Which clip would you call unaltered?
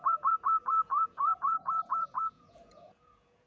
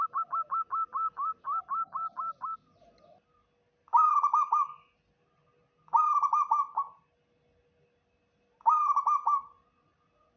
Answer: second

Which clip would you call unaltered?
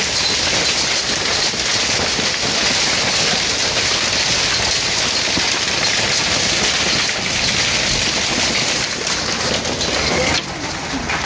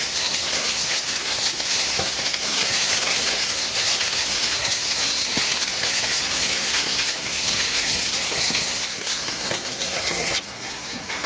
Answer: first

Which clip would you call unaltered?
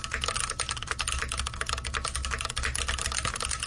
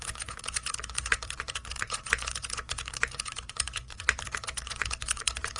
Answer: first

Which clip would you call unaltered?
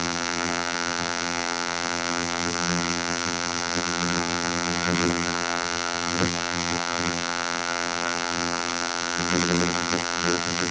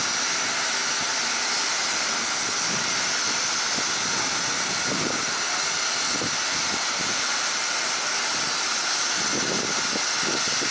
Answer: second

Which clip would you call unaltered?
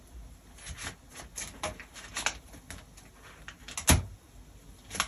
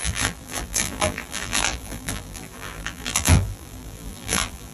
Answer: first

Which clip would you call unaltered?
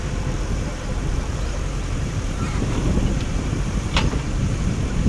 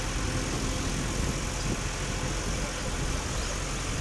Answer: second